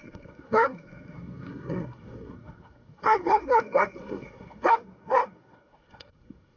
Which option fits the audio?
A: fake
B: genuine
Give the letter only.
A